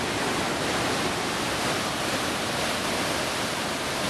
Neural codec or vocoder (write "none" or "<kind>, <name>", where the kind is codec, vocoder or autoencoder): none